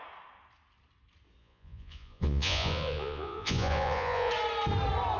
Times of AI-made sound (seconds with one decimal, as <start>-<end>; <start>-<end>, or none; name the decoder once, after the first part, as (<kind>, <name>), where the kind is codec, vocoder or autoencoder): 1.4-4.3 (vocoder, Vocos)